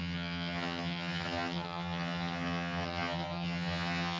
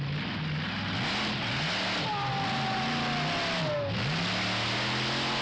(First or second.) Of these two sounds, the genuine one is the second